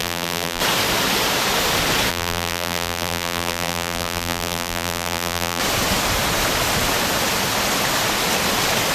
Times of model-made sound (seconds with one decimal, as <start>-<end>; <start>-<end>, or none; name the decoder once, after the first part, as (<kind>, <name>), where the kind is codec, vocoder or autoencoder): 0.0-0.6 (vocoder, BigVGAN v2); 2.1-5.6